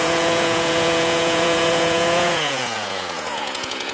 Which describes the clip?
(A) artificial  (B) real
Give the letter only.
A